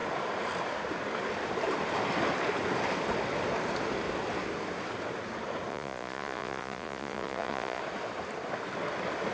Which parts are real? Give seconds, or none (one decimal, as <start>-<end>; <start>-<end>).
0.0-5.7; 7.8-9.3